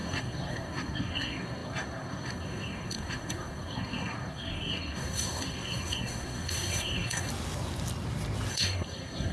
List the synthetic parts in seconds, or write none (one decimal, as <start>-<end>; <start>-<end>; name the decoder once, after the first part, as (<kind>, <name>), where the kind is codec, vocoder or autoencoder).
0.0-7.3 (codec, SNAC); 8.5-9.3